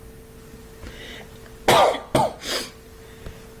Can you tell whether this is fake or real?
real